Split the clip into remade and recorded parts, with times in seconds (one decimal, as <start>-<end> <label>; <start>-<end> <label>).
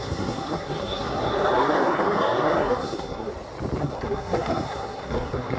0.0-3.3 remade; 3.3-3.8 recorded; 3.8-5.6 remade